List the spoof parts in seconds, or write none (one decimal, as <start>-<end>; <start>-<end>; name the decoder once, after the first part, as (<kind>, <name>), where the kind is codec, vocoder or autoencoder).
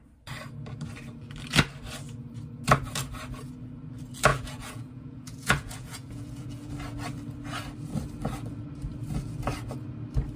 4.3-6.7 (vocoder, Vocos)